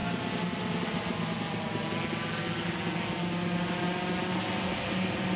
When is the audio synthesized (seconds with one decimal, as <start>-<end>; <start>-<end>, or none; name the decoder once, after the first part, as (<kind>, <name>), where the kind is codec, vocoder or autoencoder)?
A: none